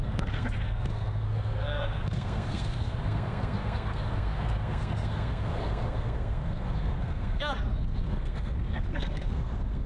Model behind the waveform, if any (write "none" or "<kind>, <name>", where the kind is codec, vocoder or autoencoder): codec, SNAC